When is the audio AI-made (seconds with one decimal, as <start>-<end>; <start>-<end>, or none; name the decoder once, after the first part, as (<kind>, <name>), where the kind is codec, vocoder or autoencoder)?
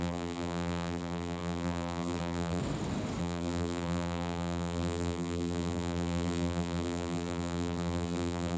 0.0-2.6 (vocoder, BigVGAN v2); 3.2-8.6